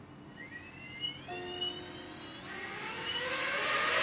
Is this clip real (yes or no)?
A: yes